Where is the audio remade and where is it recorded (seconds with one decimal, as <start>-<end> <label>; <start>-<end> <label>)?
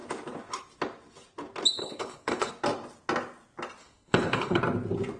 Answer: 0.0-1.8 recorded; 1.8-2.5 remade; 2.5-3.8 recorded; 3.8-4.6 remade; 4.6-5.2 recorded